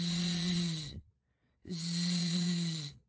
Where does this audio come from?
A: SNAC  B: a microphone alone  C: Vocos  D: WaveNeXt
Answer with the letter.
C